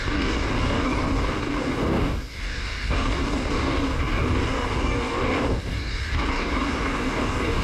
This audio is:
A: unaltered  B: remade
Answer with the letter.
B